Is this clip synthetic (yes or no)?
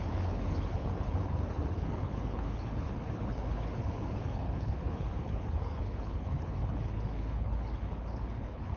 yes